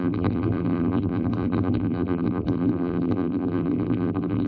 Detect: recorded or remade remade